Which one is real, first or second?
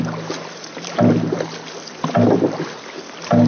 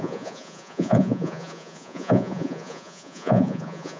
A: first